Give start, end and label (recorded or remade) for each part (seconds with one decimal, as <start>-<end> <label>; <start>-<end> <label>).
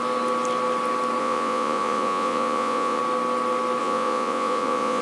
0.0-1.2 recorded; 1.2-3.0 remade; 3.0-3.8 recorded; 3.8-5.0 remade